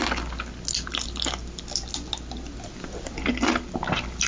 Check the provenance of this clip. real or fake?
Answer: real